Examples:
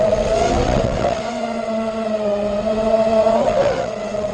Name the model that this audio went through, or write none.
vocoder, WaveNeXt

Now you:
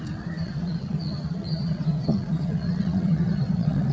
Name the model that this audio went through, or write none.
vocoder, WaveNeXt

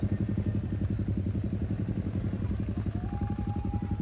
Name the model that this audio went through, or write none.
none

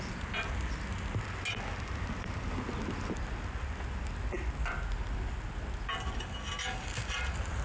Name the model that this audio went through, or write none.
none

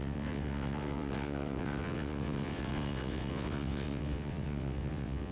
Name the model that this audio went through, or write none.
vocoder, WaveNeXt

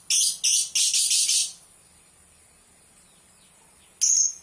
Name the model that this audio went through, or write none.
none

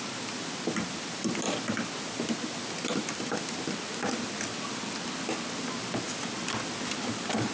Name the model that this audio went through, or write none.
none